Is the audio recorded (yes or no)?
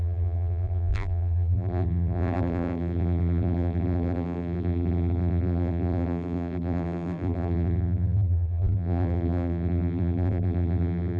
no